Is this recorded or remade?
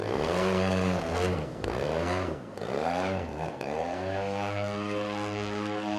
remade